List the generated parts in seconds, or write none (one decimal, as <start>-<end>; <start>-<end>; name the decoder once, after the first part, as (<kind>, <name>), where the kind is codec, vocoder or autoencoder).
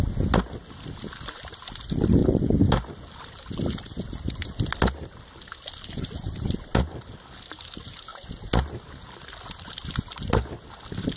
none